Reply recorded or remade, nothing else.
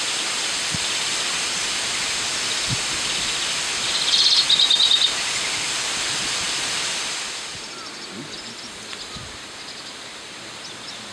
recorded